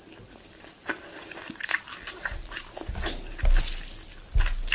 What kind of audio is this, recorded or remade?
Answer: recorded